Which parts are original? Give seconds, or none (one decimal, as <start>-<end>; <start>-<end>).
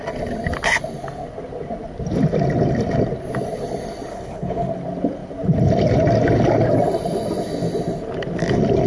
0.0-4.1; 4.7-8.9